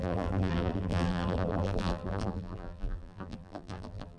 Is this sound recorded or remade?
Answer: remade